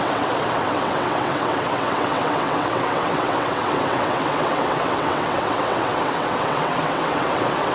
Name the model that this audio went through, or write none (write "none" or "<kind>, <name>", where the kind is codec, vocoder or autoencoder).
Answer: vocoder, WaveNeXt